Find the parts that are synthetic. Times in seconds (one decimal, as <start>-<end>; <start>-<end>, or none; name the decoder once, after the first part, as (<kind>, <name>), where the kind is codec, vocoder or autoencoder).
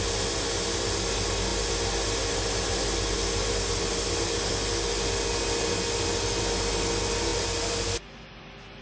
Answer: none